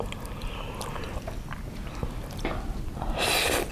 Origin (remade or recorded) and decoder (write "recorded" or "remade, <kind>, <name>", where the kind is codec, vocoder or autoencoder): remade, vocoder, BigVGAN v2